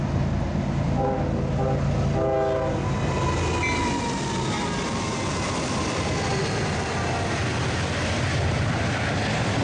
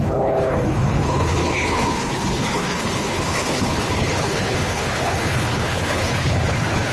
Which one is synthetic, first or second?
second